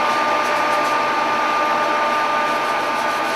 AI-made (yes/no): no